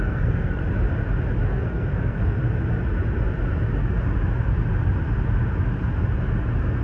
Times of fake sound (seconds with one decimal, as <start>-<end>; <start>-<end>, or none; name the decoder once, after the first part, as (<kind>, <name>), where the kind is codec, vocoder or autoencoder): 0.0-0.6 (codec, SNAC); 1.5-2.4